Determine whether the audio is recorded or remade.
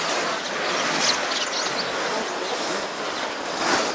recorded